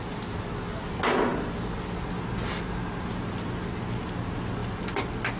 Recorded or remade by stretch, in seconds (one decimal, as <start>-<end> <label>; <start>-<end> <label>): 0.0-5.4 recorded